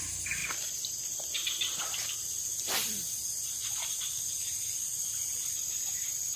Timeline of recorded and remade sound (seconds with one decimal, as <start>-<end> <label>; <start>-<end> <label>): 0.0-0.4 recorded; 0.4-4.2 remade; 4.2-6.4 recorded